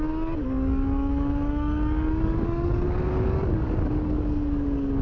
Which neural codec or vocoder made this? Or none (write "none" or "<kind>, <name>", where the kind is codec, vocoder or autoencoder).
codec, DAC